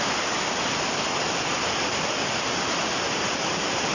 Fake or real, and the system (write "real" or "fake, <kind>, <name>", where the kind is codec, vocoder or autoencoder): real